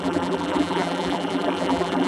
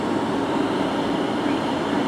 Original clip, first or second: second